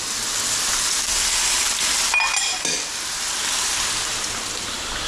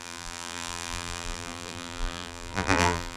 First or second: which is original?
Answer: first